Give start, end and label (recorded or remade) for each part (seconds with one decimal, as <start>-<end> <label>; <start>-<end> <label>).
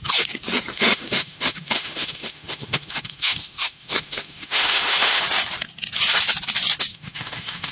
0.0-0.7 recorded; 0.7-5.2 remade; 5.2-6.9 recorded; 6.9-7.7 remade